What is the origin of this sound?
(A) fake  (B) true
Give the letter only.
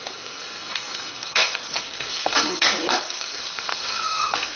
A